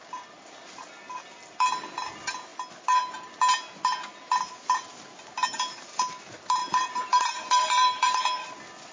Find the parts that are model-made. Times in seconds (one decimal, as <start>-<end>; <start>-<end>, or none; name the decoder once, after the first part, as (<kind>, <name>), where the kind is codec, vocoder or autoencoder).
6.6-8.2 (vocoder, BigVGAN v2)